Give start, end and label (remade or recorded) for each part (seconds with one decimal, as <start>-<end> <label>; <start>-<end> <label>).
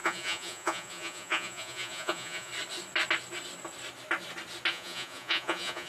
0.0-2.5 remade; 2.5-4.7 recorded; 4.7-5.9 remade